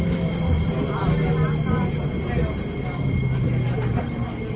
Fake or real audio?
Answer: real